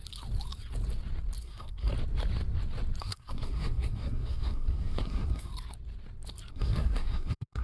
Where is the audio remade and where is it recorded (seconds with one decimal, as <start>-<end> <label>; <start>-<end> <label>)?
0.0-1.4 recorded; 1.4-1.9 remade; 1.9-3.0 recorded; 3.0-5.5 remade; 5.5-6.5 recorded; 6.5-7.6 remade